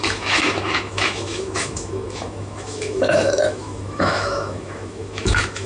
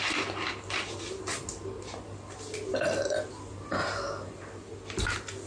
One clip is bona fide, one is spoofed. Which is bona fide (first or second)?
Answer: second